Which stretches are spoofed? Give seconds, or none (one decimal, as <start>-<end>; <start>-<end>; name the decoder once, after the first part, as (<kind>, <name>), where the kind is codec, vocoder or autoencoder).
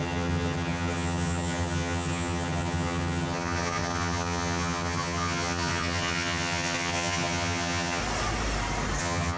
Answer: 0.0-8.0 (vocoder, HiFi-GAN); 9.0-9.4